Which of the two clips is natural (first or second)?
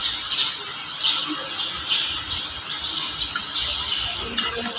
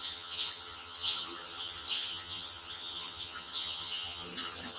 first